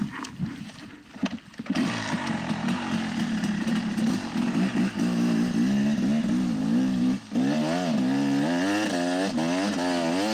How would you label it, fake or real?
real